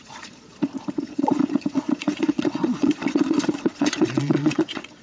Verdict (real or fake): fake